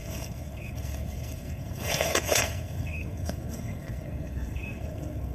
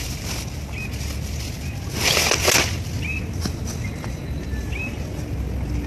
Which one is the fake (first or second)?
first